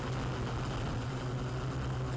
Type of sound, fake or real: real